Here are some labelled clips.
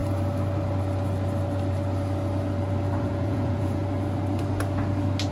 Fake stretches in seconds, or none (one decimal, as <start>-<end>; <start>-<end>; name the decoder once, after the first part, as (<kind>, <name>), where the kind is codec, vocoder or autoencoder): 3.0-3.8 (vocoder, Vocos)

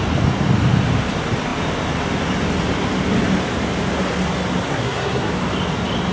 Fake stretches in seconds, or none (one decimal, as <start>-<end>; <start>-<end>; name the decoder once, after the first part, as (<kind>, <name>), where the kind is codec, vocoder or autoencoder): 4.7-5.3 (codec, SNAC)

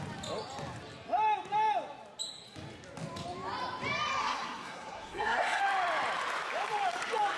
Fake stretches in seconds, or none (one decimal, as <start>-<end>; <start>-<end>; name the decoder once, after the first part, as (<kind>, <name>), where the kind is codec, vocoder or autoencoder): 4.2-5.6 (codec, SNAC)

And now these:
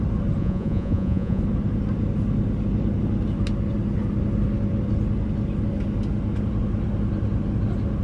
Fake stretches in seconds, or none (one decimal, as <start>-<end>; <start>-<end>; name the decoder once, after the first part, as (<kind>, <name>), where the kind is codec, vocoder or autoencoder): 0.4-1.4 (vocoder, Vocos)

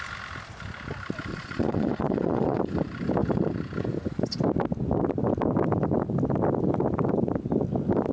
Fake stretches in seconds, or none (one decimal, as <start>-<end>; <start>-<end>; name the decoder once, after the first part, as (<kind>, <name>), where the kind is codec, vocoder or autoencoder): 1.3-2.6 (vocoder, Vocos)

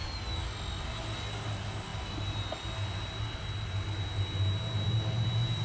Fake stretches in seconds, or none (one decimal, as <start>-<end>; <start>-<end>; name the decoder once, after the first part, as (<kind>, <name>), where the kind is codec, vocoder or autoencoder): none